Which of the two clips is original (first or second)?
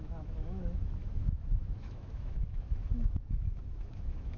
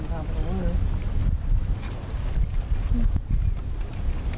second